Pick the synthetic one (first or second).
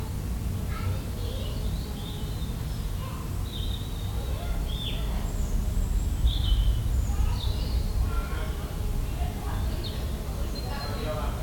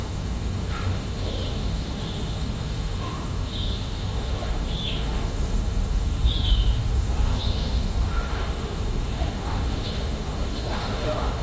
second